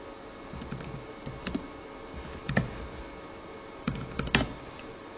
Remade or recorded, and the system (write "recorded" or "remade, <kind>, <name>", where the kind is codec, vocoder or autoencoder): recorded